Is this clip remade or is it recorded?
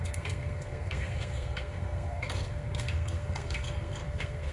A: remade